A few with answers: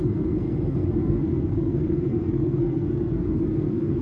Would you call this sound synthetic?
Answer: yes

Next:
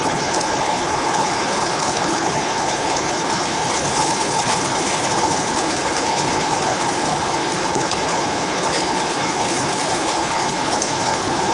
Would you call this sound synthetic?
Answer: yes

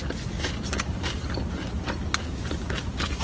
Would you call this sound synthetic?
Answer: no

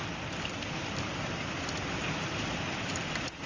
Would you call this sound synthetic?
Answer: yes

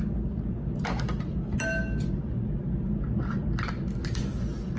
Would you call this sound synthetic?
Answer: no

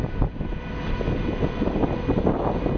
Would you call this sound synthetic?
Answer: no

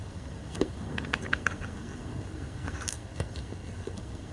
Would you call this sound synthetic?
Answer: yes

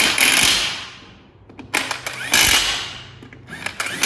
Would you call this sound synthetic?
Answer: no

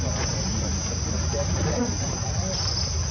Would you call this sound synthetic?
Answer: no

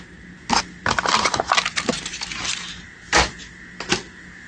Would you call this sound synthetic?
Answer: no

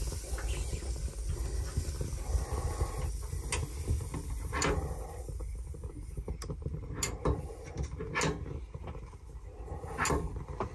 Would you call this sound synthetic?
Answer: no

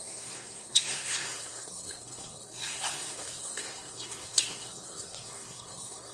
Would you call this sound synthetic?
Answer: yes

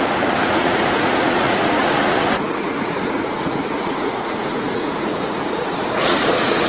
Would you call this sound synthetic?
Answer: yes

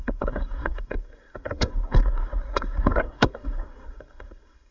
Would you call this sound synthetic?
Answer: yes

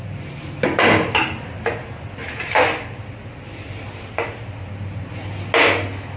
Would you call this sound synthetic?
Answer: no